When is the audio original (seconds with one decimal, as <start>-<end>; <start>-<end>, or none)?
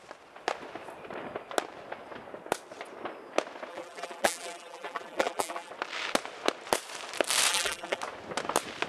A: 0.0-3.7; 5.7-7.5; 8.0-8.9